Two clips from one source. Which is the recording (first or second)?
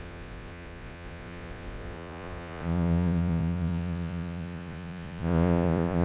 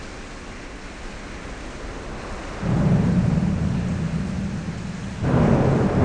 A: second